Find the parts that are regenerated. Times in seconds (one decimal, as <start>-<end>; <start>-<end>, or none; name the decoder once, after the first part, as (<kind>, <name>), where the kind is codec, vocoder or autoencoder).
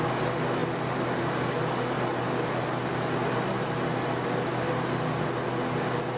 none